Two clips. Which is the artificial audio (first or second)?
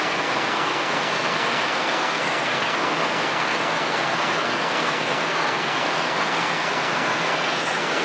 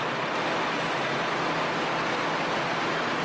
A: first